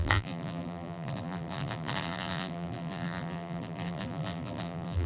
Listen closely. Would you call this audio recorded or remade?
remade